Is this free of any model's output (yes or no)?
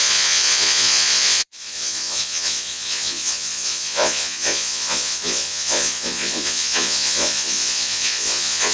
no